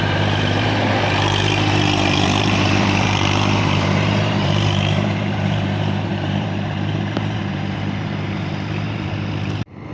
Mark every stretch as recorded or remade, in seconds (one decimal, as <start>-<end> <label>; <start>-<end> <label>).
0.0-9.9 remade